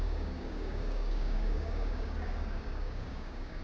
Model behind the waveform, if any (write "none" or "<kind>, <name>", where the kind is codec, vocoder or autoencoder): codec, DAC